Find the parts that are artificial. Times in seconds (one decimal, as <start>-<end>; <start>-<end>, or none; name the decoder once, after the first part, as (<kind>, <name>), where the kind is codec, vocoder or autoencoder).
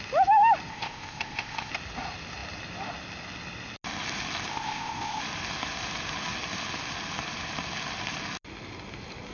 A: 0.7-1.7 (codec, ZipCodec); 4.5-5.2